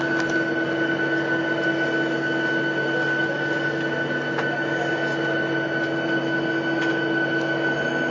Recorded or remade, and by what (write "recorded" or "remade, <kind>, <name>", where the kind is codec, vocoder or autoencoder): recorded